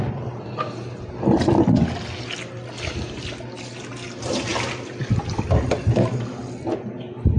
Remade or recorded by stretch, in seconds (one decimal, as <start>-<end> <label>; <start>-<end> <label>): 0.0-7.4 recorded